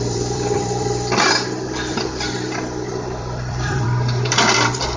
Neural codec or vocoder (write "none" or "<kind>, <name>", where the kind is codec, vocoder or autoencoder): vocoder, BigVGAN v2